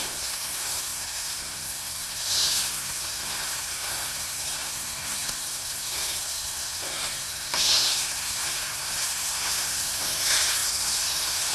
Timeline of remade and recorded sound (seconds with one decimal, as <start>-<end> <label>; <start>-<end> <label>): 0.0-11.5 remade